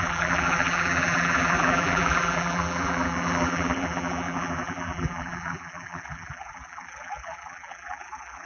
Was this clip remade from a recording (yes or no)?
yes